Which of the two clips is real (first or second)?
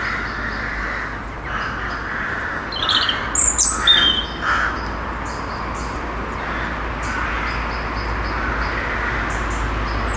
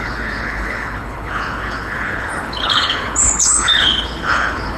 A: first